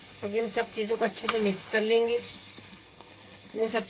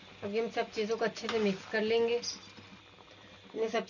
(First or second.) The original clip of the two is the second